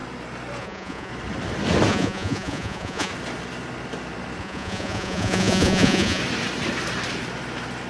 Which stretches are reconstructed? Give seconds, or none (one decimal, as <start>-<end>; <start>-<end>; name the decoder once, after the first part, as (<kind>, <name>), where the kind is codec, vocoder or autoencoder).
0.6-1.1 (vocoder, Vocos); 1.9-3.1; 4.4-6.2